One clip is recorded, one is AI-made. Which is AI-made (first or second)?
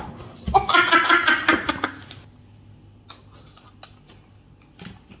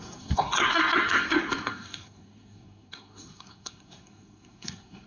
second